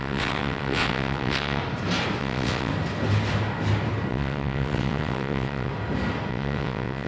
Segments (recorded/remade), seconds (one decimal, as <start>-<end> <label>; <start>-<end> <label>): 0.0-1.6 remade; 1.6-2.2 recorded; 2.2-2.7 remade; 2.7-4.1 recorded; 4.1-5.7 remade; 5.7-6.3 recorded; 6.3-7.1 remade